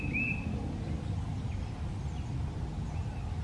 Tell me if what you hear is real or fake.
real